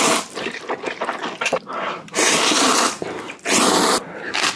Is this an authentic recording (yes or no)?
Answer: yes